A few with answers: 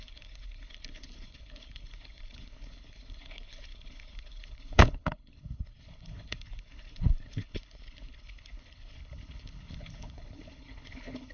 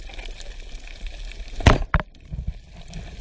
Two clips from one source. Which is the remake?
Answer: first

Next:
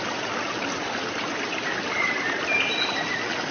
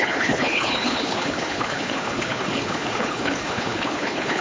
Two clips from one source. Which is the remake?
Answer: second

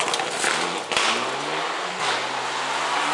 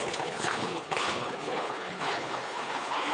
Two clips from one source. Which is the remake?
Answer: second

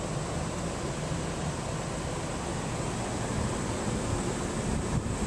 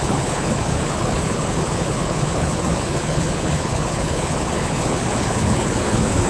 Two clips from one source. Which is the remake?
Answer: second